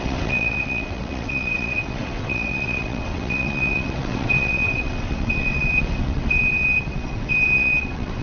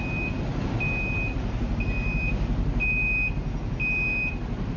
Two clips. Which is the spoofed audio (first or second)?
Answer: first